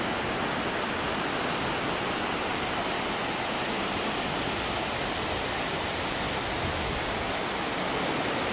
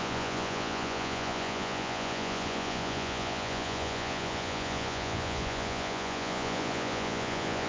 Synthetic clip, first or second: second